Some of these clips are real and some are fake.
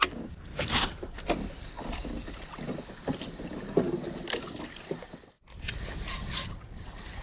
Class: real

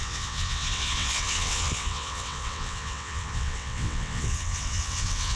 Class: fake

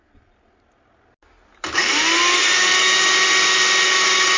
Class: real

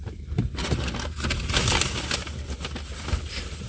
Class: real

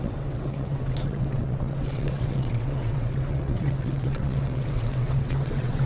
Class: fake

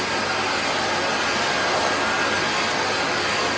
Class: real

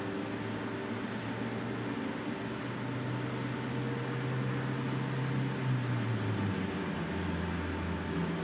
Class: real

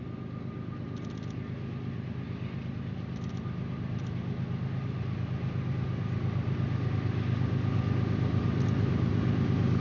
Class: real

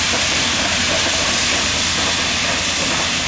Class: real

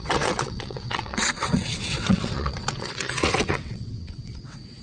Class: fake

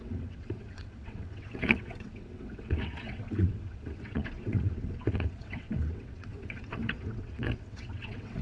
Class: fake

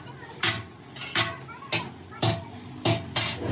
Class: real